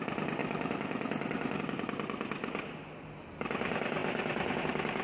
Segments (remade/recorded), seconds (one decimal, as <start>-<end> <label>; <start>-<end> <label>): 0.0-0.4 recorded; 0.4-1.6 remade; 1.6-5.0 recorded